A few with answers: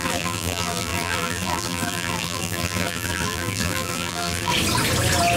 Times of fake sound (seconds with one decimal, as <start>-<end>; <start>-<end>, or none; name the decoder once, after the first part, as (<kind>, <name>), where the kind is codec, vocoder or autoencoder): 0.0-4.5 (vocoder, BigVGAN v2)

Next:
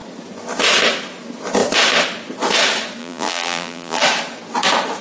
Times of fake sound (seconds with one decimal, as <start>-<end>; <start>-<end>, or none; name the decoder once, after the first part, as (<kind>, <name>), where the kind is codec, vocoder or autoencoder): 3.0-4.0 (vocoder, BigVGAN v2)

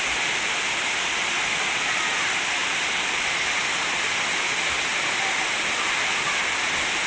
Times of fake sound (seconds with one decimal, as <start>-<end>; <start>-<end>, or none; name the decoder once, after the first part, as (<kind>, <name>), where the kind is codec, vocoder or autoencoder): 2.6-3.2 (vocoder, BigVGAN v2); 4.9-5.9

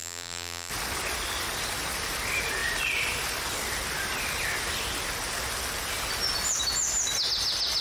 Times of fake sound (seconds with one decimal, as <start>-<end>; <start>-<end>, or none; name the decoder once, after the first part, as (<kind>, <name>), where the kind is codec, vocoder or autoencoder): 0.0-0.7 (vocoder, BigVGAN v2)

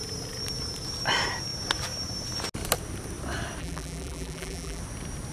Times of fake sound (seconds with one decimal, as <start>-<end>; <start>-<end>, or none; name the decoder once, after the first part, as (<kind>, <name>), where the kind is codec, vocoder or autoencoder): 3.6-4.8 (vocoder, BigVGAN v2)

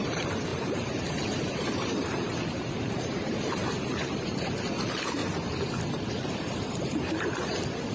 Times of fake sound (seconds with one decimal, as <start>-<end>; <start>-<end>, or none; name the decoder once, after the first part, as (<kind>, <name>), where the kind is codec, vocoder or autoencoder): 0.0-5.2 (vocoder, BigVGAN v2); 5.9-7.9